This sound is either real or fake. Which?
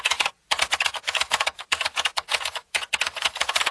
fake